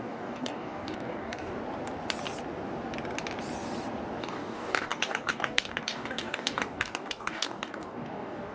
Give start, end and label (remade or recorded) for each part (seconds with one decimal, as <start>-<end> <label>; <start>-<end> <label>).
0.0-1.6 remade; 1.6-4.2 recorded; 4.2-8.5 remade